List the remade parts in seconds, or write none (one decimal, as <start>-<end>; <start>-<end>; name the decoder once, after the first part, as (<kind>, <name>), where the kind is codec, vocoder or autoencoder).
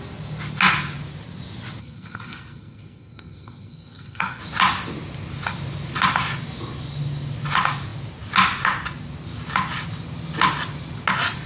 1.8-4.4 (codec, SNAC)